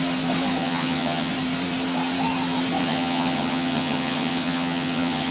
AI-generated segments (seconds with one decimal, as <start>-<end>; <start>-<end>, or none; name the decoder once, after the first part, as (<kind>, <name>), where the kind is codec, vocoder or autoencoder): 0.6-1.3 (vocoder, HiFi-GAN); 2.8-5.3